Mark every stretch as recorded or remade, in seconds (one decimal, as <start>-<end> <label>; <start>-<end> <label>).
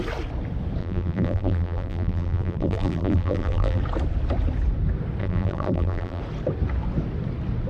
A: 0.0-0.8 recorded; 0.8-3.8 remade; 3.8-5.2 recorded; 5.2-6.2 remade; 6.2-7.7 recorded